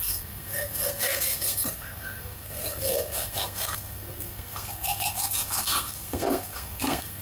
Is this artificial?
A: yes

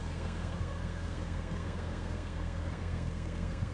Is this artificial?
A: yes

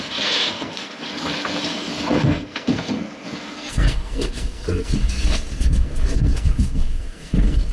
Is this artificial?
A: yes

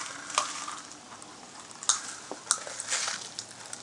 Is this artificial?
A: no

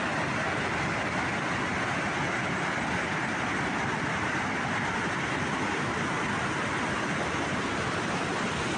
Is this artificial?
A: no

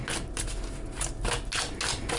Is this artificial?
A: no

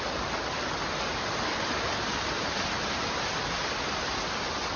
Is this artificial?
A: no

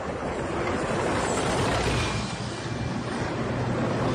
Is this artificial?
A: no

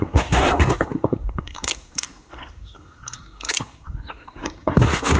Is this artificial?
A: yes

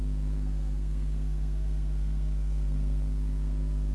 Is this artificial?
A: yes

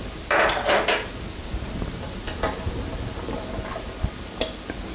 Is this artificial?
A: no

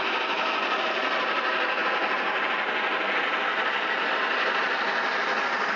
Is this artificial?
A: no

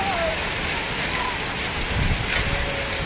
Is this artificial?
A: no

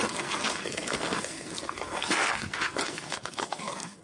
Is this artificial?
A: yes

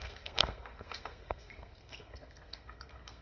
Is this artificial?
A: yes